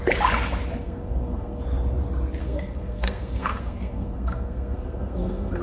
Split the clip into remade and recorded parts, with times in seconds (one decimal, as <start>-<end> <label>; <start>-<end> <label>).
0.0-0.8 recorded; 0.8-1.6 remade; 1.6-2.4 recorded; 2.4-5.6 remade